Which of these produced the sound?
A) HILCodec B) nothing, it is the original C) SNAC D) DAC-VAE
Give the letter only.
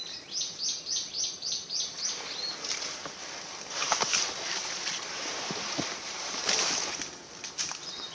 B